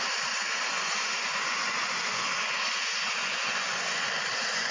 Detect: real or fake fake